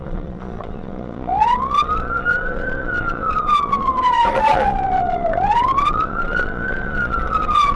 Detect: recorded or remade remade